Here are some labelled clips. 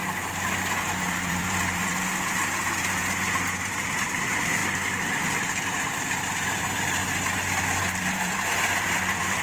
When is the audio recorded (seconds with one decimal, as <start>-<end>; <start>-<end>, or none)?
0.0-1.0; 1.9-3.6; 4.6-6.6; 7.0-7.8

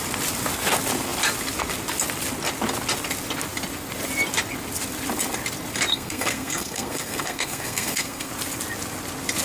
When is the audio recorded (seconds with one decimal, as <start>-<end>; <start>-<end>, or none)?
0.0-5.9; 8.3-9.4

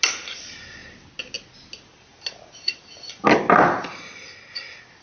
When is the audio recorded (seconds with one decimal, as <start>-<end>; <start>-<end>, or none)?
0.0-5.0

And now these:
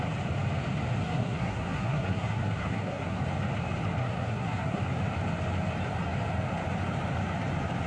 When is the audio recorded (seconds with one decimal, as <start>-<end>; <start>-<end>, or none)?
0.0-1.0; 3.2-4.0; 4.8-7.9